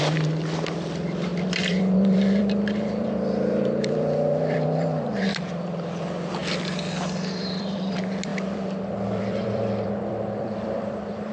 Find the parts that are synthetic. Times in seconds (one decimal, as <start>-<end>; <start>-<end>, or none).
0.0-6.4; 7.3-11.3